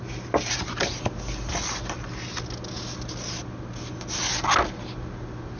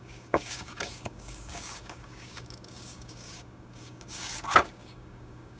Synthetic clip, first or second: second